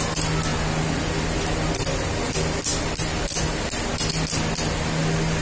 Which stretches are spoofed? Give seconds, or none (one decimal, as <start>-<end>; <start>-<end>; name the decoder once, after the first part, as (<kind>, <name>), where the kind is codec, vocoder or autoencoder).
none